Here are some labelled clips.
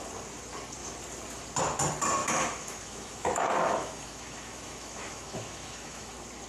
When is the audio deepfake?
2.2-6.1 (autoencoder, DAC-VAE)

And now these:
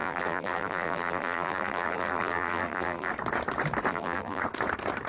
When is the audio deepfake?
0.0-3.1 (vocoder, BigVGAN v2); 3.9-4.4

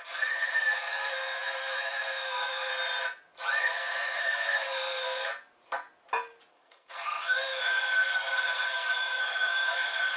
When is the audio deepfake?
0.0-2.7 (codec, SNAC); 3.6-5.3; 6.5-10.2

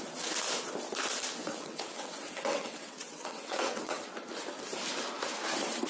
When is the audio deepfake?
1.4-4.0 (vocoder, WaveNeXt)

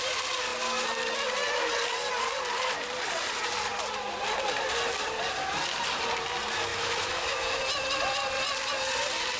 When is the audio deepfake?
6.7-7.6 (autoencoder, DAC-VAE)

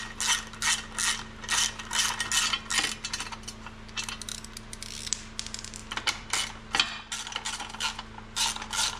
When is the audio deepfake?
5.8-6.6 (vocoder, BigVGAN v2)